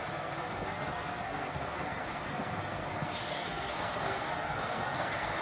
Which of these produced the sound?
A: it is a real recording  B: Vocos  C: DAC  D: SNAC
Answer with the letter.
D